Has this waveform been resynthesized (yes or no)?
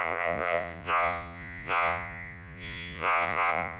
yes